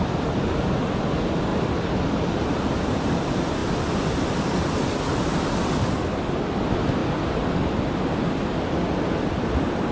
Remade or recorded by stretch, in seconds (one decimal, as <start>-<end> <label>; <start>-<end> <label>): 0.0-1.5 recorded; 1.5-3.0 remade; 3.0-9.9 recorded